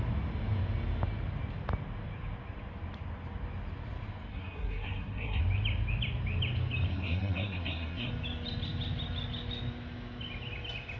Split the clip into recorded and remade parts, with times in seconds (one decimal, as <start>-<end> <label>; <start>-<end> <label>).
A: 0.0-4.3 recorded; 4.3-5.4 remade; 5.4-6.9 recorded; 6.9-8.1 remade; 8.1-11.0 recorded